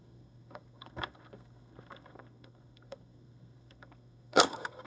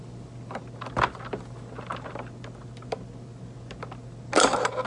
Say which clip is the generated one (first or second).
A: first